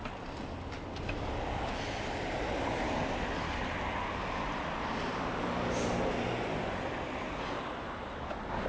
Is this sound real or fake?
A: real